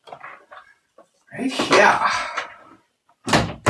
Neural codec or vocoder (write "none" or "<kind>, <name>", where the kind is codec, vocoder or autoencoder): none